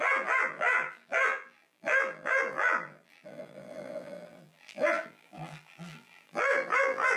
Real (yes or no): no